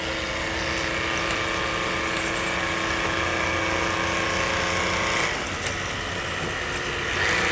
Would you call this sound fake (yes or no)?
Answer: no